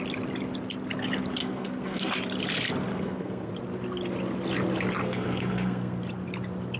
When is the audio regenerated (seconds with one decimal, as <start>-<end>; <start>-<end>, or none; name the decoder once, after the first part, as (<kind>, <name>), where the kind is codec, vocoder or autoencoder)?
1.4-2.1 (codec, SNAC); 2.9-3.5; 5.0-6.0